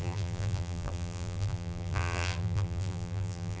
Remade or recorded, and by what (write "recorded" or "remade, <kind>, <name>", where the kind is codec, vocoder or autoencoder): remade, vocoder, BigVGAN v2